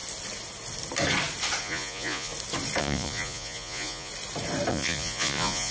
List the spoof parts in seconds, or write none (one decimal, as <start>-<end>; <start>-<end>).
1.6-2.3; 2.8-4.1; 4.7-5.7